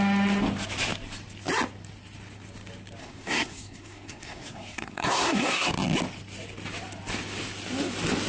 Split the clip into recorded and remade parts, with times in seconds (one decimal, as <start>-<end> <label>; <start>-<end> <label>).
0.0-3.0 recorded; 3.0-5.7 remade; 5.7-8.3 recorded